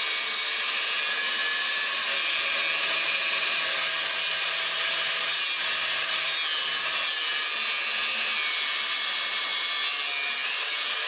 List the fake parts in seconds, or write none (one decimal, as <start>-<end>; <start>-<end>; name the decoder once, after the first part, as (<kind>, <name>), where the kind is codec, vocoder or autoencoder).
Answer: none